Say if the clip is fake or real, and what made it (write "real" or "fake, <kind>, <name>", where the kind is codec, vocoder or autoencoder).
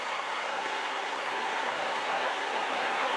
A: fake, codec, SNAC